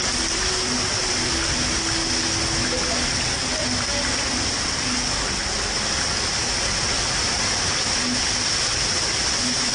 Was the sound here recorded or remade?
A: recorded